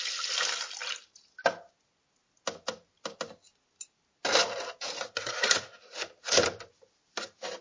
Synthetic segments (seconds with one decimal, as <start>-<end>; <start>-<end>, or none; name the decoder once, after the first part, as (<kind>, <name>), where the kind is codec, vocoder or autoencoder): 0.8-1.7 (vocoder, BigVGAN v2); 4.4-6.8